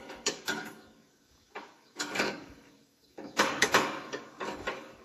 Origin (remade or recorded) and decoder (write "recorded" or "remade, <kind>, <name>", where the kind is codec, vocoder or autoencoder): remade, codec, DAC